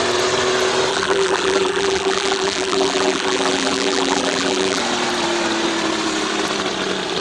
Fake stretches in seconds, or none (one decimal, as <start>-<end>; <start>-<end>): 0.9-4.8